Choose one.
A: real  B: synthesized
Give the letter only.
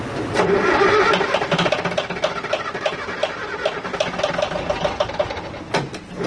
A